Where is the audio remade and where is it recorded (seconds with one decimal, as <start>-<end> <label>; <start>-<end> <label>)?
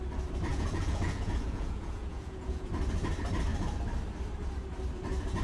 0.0-0.5 recorded; 0.5-2.7 remade; 2.7-5.4 recorded